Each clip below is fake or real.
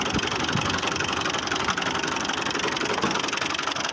real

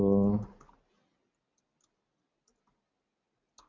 real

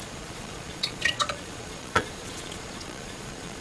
fake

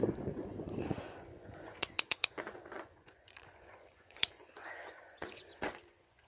fake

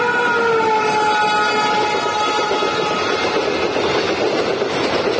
real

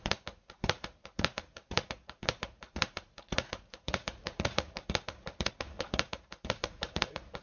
fake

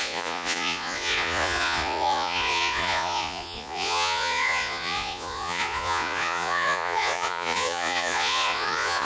fake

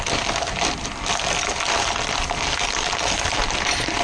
real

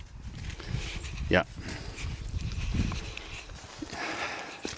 real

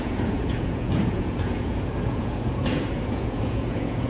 fake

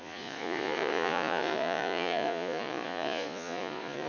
fake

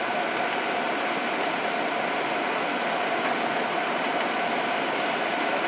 real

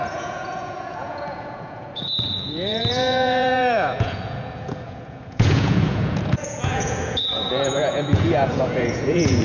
fake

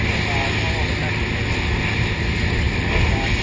real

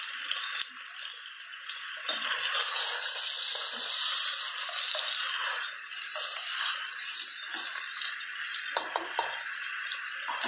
real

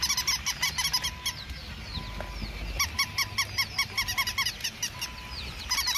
real